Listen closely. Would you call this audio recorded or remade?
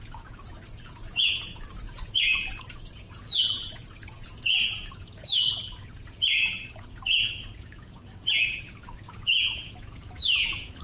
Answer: remade